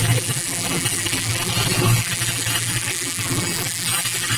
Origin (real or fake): fake